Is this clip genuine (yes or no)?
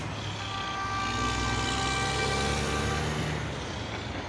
yes